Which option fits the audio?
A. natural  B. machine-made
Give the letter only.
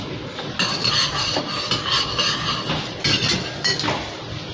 A